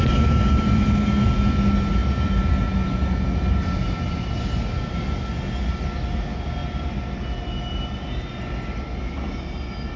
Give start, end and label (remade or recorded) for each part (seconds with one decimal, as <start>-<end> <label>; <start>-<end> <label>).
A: 0.0-10.0 recorded